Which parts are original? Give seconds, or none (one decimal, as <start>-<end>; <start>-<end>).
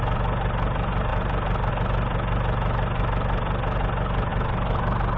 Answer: 0.0-5.2